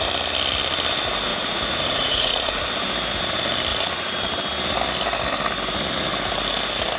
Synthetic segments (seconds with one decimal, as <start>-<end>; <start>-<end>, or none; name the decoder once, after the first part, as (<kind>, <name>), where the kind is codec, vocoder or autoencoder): 1.3-2.6 (vocoder, Vocos); 3.7-4.3

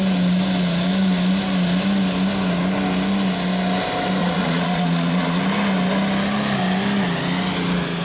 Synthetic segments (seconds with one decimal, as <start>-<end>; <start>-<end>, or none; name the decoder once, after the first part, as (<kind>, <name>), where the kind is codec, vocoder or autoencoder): 4.2-5.4 (vocoder, Vocos)

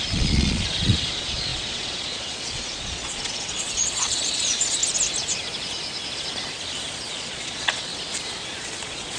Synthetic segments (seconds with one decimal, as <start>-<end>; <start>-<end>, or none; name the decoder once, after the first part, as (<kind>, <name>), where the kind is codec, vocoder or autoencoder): 0.0-4.8 (vocoder, Vocos); 7.1-7.9; 8.6-9.2

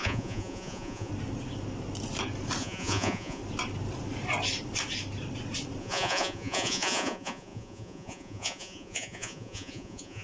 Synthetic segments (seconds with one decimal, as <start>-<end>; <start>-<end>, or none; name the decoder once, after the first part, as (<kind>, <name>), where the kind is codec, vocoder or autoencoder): 0.0-1.1 (vocoder, Vocos); 2.6-3.4; 5.8-10.2

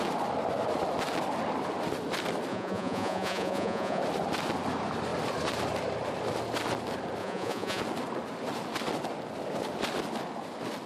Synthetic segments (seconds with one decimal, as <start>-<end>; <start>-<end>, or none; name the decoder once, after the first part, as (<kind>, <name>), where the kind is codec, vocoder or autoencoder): 2.5-4.0 (vocoder, Vocos); 7.2-7.8